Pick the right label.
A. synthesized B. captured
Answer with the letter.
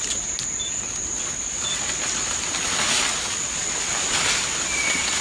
B